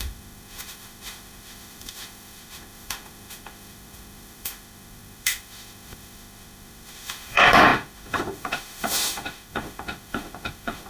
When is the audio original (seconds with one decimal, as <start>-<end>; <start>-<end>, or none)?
none